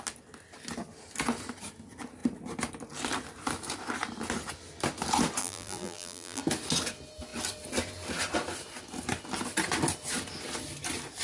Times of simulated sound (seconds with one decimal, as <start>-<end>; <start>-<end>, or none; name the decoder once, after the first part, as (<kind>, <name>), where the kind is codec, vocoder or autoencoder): 5.4-6.4 (vocoder, BigVGAN v2)